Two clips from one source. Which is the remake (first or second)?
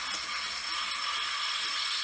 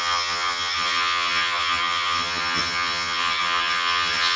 second